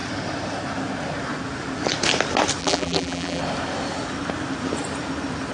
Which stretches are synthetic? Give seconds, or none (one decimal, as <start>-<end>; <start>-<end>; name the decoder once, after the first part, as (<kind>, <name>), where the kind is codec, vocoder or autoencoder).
2.6-3.4 (vocoder, BigVGAN v2)